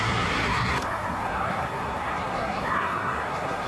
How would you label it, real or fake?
fake